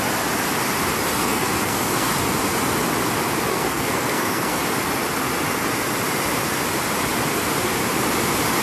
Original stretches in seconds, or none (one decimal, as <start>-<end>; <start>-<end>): 0.0-1.2; 2.1-3.5; 4.6-8.6